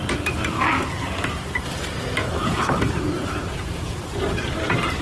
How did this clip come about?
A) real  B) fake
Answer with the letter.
A